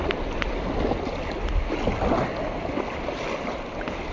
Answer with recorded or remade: recorded